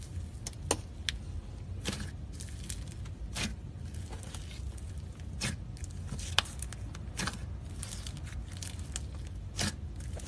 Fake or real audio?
real